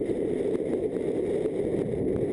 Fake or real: fake